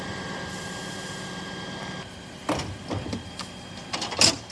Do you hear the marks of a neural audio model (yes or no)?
no